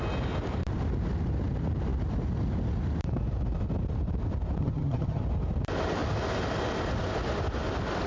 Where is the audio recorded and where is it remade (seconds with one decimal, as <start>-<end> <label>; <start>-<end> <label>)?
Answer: 0.0-4.6 recorded; 4.6-5.2 remade; 5.2-8.1 recorded